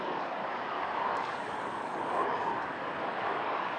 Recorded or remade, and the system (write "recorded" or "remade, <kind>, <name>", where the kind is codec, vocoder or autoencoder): remade, codec, DAC